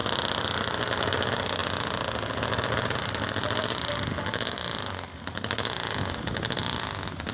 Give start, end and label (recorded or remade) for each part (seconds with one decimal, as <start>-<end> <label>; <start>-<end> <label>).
0.0-7.3 recorded